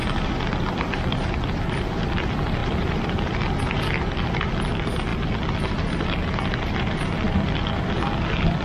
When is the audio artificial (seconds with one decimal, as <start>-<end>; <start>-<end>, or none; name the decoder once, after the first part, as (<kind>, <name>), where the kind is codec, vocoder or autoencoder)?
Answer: 2.6-3.3 (vocoder, BigVGAN v2)

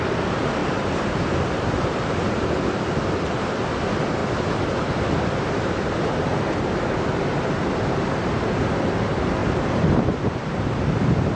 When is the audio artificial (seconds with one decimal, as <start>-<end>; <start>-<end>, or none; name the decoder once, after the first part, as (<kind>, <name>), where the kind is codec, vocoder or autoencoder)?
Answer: 0.6-2.5 (vocoder, BigVGAN v2); 9.4-10.5

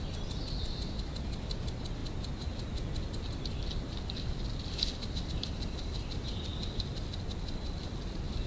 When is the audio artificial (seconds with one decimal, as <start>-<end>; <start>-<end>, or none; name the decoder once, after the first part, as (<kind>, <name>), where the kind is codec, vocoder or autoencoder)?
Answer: 0.0-2.0 (vocoder, BigVGAN v2); 5.2-6.5; 7.1-8.5

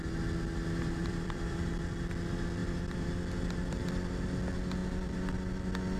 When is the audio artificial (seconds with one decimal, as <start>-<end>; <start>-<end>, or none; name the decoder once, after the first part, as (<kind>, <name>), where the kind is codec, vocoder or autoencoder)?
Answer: 1.0-1.8 (vocoder, BigVGAN v2); 2.6-3.1; 4.8-5.5

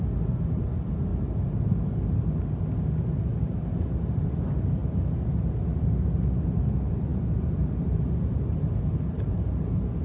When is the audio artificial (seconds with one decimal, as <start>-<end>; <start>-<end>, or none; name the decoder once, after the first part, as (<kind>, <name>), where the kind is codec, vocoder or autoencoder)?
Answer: 1.1-2.0 (vocoder, BigVGAN v2); 7.1-10.0

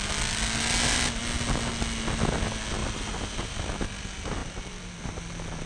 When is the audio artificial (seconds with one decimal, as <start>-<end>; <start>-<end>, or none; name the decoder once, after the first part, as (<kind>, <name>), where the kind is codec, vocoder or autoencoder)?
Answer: none

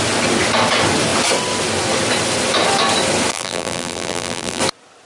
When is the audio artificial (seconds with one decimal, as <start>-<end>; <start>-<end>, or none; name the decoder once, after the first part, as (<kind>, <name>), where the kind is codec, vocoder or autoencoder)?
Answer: 3.3-4.6 (vocoder, BigVGAN v2)

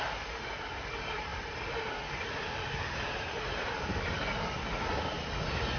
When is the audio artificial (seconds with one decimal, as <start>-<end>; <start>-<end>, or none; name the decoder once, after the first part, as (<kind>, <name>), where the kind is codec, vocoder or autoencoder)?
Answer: 1.3-3.8 (vocoder, BigVGAN v2)